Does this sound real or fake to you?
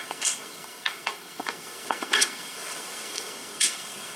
fake